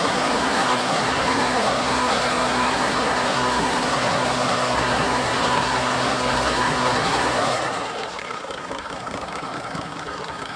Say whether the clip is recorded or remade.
remade